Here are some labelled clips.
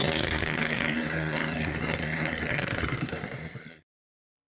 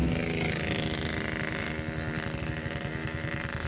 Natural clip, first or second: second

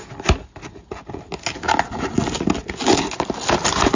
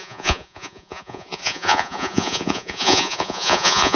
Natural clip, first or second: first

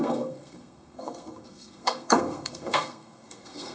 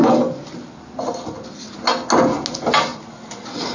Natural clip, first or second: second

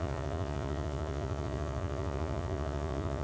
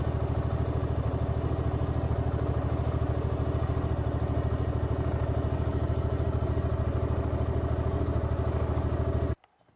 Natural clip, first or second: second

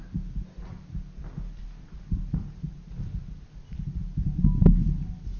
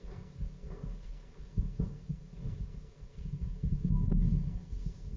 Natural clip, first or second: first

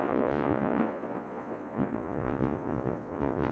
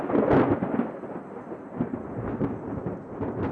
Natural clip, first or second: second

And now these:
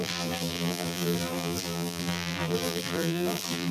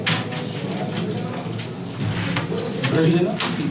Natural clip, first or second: second